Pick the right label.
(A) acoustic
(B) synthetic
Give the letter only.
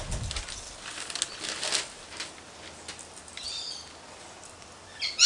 A